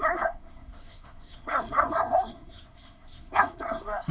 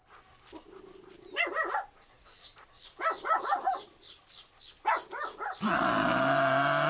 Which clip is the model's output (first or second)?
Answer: first